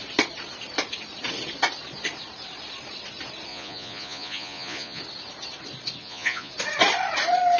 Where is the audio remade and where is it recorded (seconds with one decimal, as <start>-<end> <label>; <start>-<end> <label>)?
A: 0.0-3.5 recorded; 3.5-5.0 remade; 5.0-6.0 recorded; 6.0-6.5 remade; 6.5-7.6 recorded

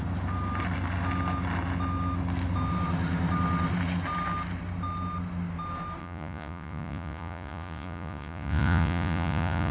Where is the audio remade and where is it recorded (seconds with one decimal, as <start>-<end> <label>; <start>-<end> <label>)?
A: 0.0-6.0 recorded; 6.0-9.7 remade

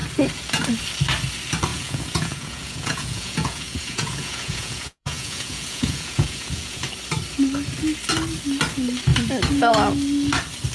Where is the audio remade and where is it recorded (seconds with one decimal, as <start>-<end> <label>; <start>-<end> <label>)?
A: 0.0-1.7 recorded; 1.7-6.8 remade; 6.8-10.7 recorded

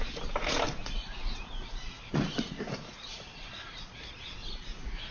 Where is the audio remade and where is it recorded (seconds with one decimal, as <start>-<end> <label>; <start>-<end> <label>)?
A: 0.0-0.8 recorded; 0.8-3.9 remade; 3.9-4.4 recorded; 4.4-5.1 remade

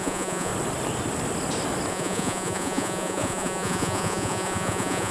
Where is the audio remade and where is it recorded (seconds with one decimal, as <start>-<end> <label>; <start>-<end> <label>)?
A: 0.0-0.5 remade; 0.5-1.9 recorded; 1.9-5.1 remade